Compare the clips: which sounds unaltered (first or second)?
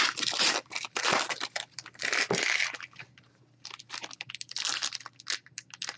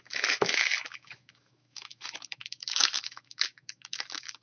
first